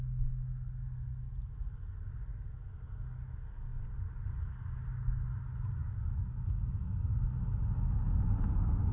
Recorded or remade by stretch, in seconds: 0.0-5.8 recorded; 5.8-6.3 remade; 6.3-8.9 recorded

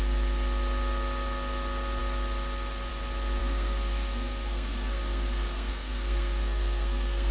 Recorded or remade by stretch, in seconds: 0.0-3.4 recorded; 3.4-7.3 remade

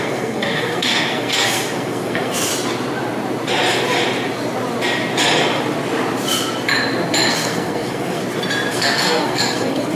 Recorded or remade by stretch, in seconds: 0.0-2.5 remade; 2.5-7.3 recorded; 7.3-8.2 remade; 8.2-8.7 recorded; 8.7-10.0 remade

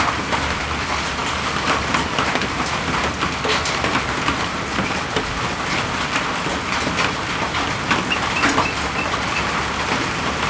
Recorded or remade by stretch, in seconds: 0.0-10.5 recorded